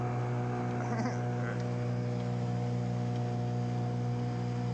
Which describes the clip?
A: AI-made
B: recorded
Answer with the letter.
B